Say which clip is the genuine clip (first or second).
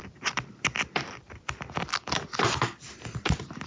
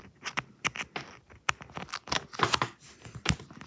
second